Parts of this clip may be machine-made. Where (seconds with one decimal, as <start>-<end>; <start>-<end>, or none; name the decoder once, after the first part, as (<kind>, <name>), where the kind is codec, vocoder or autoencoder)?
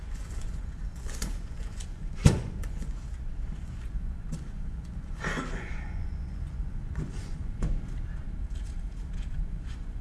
0.0-3.0 (vocoder, Vocos); 3.6-7.7; 9.3-10.0